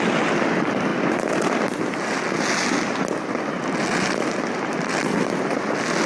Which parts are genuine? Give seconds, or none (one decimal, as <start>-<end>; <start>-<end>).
0.0-6.1